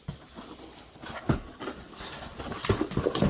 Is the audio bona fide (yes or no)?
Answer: yes